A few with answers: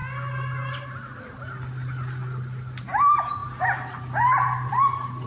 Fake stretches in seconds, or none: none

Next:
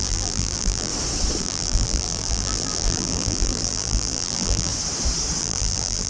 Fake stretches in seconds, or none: 0.0-0.9; 1.4-4.7; 5.4-6.1

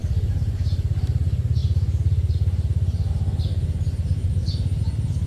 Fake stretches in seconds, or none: 0.0-1.2; 1.6-3.1; 4.2-4.8